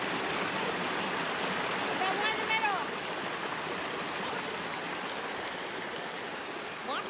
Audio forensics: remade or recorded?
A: recorded